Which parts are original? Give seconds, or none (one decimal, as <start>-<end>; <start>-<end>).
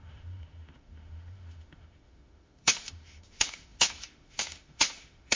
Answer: none